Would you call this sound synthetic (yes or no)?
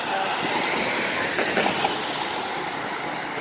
no